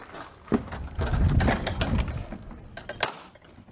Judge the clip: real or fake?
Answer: real